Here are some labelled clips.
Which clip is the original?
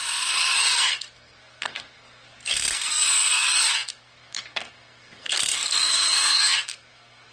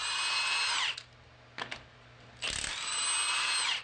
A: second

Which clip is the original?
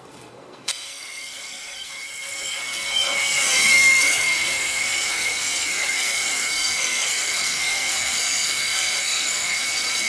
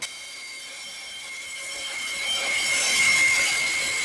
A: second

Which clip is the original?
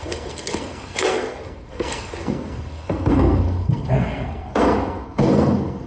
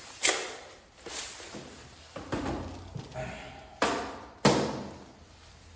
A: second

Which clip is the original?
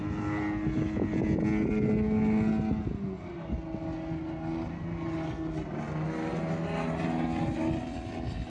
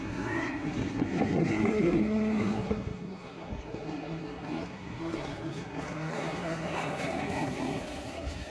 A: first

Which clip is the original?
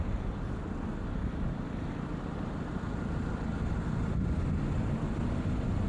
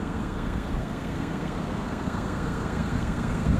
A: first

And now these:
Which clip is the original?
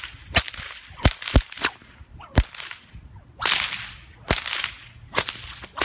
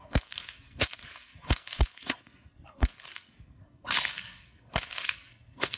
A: first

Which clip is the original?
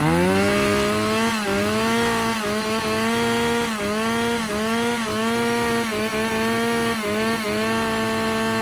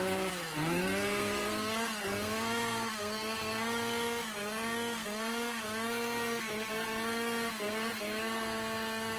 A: first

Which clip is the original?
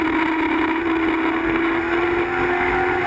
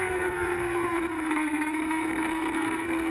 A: first